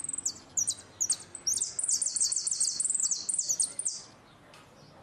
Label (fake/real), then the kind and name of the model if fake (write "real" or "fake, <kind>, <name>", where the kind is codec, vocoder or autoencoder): real